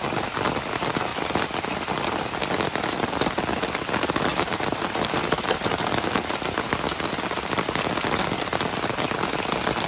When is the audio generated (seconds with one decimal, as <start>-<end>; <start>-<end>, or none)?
4.3-6.1